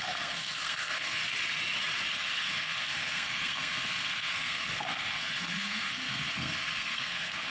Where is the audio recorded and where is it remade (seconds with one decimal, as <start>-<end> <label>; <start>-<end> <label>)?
0.0-1.2 remade; 1.2-2.1 recorded; 2.1-7.5 remade